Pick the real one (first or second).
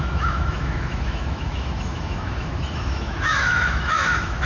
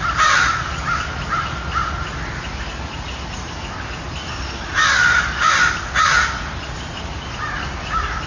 second